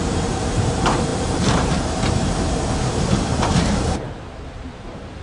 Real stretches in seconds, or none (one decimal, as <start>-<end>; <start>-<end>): none